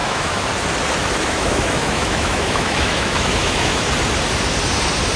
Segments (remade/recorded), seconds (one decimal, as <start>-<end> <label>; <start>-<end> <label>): 0.0-0.5 remade; 0.5-1.0 recorded; 1.0-3.9 remade; 3.9-5.2 recorded